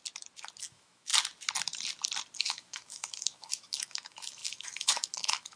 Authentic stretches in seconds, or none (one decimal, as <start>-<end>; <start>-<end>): 0.0-0.6; 1.1-2.4